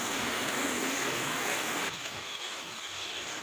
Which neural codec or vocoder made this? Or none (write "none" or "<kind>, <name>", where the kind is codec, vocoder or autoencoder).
codec, DAC